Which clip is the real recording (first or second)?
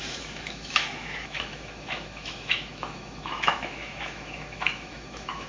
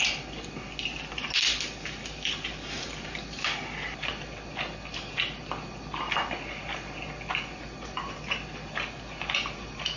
second